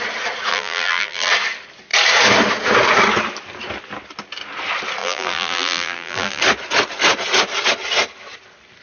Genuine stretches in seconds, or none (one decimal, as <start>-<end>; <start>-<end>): 0.0-0.5; 1.3-5.0; 6.4-8.8